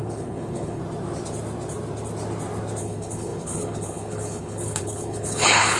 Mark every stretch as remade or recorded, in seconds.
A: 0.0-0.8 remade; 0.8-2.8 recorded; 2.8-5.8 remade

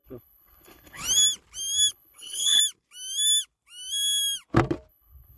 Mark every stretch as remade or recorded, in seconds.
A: 0.0-1.0 remade; 1.0-1.9 recorded; 1.9-2.6 remade; 2.6-4.9 recorded; 4.9-5.4 remade

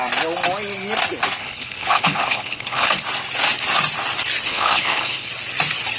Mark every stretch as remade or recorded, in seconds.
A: 0.0-1.4 recorded; 1.4-2.9 remade; 2.9-4.5 recorded; 4.5-5.3 remade; 5.3-6.0 recorded